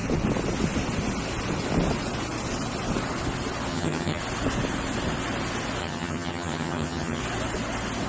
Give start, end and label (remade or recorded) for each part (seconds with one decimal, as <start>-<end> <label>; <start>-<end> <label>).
0.0-3.7 recorded; 3.7-4.2 remade; 4.2-5.8 recorded; 5.8-7.2 remade; 7.2-8.1 recorded